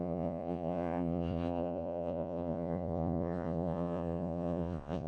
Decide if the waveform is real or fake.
fake